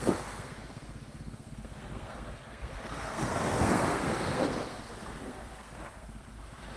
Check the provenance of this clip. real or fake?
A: fake